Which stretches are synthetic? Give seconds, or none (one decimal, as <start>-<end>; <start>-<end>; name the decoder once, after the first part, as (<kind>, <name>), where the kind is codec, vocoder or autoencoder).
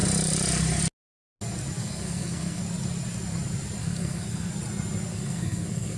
1.8-2.6 (codec, SNAC); 3.8-4.5; 5.1-6.0